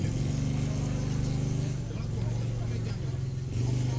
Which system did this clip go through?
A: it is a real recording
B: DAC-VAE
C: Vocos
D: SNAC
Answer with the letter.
A